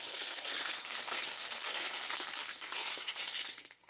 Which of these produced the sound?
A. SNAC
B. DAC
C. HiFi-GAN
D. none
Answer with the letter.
A